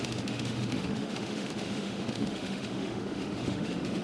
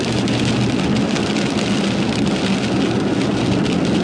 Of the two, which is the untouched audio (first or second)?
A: second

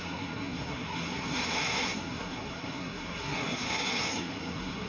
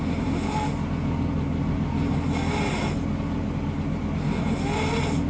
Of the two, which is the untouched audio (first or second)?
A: second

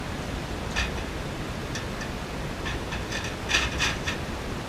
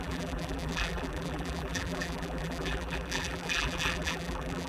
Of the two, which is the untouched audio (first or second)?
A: first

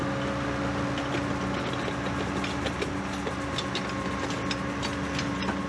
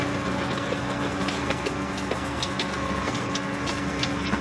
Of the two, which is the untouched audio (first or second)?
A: first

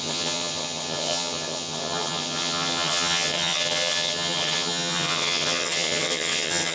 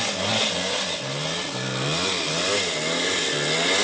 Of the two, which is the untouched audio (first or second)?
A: second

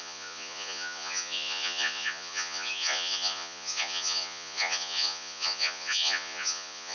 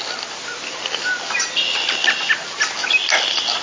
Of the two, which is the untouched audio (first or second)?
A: second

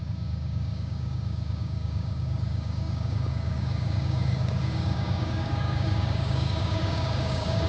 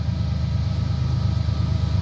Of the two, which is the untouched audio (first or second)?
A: second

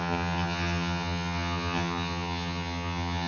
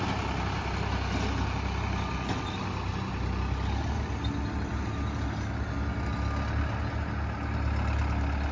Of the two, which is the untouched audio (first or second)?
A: second